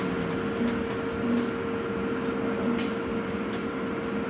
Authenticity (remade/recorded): recorded